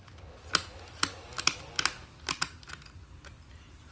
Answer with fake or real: real